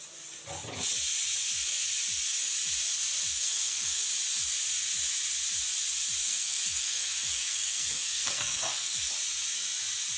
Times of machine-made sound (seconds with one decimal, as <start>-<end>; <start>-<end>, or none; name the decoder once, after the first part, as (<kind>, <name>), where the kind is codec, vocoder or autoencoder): 3.3-4.0 (codec, SNAC); 6.2-9.1